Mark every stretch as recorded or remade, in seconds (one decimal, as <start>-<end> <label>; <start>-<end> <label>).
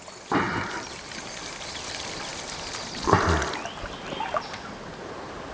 0.0-5.5 recorded